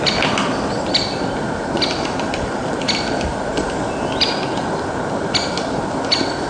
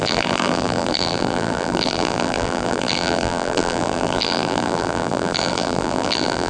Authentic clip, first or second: first